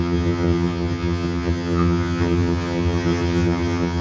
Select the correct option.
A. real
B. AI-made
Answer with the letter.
B